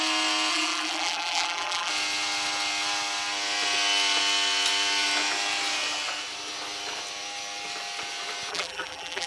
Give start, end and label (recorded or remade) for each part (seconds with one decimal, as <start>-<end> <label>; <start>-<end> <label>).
0.0-0.5 recorded; 0.5-1.9 remade; 1.9-8.5 recorded; 8.5-9.3 remade